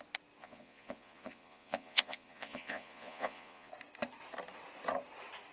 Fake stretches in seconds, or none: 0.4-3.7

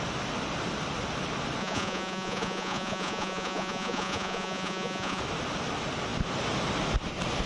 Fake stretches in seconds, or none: 1.6-5.2

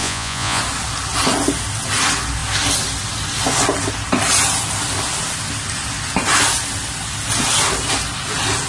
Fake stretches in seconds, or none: 0.0-0.6

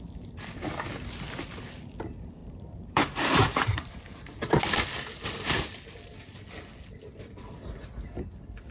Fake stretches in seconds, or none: 2.4-4.6